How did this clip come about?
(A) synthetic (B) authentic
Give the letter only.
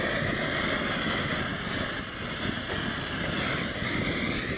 B